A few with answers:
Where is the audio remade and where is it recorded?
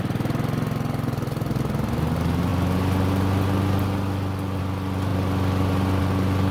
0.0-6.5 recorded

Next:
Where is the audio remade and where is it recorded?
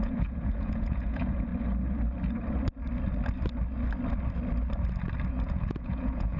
0.0-1.5 remade; 1.5-5.3 recorded; 5.3-6.4 remade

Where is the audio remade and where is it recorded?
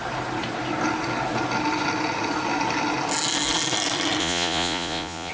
0.0-4.2 recorded; 4.2-5.3 remade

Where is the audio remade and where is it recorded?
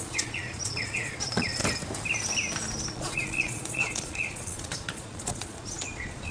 0.0-1.6 remade; 1.6-2.9 recorded; 2.9-6.3 remade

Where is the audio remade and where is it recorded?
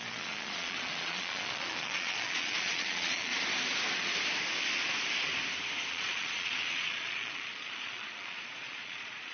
0.0-3.3 remade; 3.3-5.9 recorded; 5.9-9.3 remade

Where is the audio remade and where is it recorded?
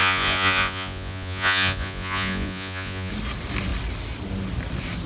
0.0-3.1 remade; 3.1-5.1 recorded